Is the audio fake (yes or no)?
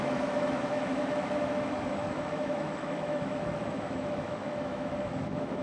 yes